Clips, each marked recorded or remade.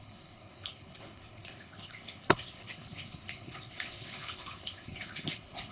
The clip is remade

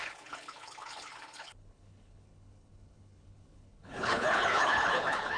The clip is remade